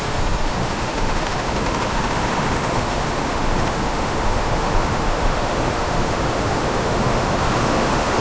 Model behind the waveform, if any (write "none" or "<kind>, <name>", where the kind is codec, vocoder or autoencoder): autoencoder, DAC-VAE